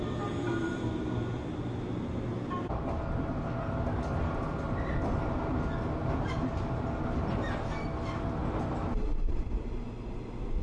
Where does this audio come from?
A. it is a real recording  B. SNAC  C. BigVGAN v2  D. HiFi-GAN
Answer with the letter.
A